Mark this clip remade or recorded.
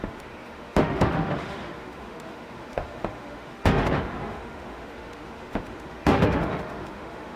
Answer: remade